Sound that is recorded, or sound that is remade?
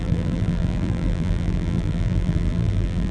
remade